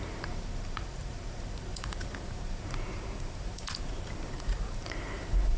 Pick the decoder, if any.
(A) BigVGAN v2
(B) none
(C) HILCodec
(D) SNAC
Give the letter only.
A